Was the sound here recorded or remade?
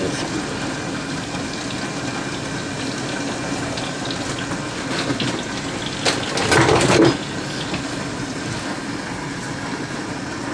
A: recorded